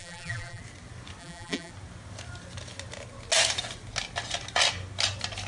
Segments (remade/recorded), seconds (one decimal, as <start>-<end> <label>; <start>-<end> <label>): 0.0-0.6 remade; 0.6-1.2 recorded; 1.2-1.7 remade; 1.7-5.5 recorded